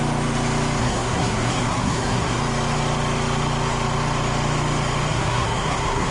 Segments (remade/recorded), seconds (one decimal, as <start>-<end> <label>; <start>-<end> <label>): 0.0-0.8 recorded; 0.8-2.4 remade; 2.4-5.1 recorded; 5.1-6.1 remade